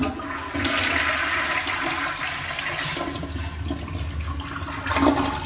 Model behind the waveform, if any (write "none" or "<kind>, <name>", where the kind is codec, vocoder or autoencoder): none